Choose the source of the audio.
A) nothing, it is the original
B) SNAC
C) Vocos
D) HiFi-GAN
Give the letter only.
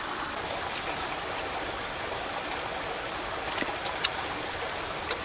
A